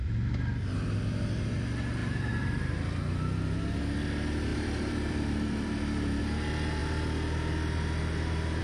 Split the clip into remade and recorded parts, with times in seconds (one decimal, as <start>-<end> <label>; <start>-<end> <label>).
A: 0.0-2.0 recorded; 2.0-2.7 remade; 2.7-4.5 recorded; 4.5-6.2 remade; 6.2-8.6 recorded